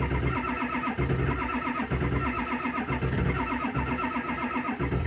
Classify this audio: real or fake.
real